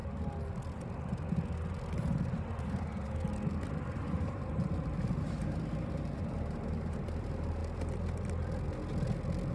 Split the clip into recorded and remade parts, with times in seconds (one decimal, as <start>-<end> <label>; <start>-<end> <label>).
0.0-4.0 recorded; 4.0-7.6 remade; 7.6-9.5 recorded

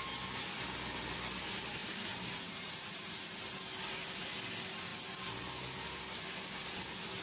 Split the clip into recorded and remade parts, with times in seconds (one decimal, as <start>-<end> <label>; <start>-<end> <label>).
0.0-1.8 recorded; 1.8-3.6 remade; 3.6-7.2 recorded

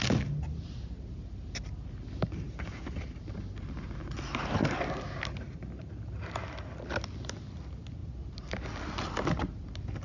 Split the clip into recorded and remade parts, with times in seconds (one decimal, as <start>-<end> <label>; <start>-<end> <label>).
0.0-10.0 recorded

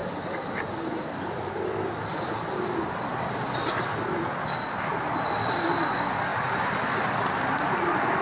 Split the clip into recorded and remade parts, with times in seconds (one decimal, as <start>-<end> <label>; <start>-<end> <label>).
0.0-1.4 remade; 1.4-8.2 recorded

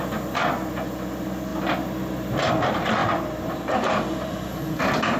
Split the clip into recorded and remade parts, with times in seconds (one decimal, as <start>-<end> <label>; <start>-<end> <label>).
0.0-3.0 recorded; 3.0-4.8 remade; 4.8-5.2 recorded

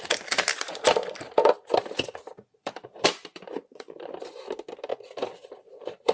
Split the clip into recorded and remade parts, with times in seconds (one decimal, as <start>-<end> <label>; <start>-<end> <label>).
0.0-0.5 recorded; 0.5-4.2 remade; 4.2-4.9 recorded; 4.9-6.1 remade

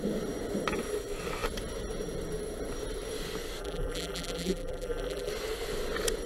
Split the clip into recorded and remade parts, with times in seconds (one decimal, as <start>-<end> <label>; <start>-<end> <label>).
0.0-3.6 recorded; 3.6-5.3 remade; 5.3-6.3 recorded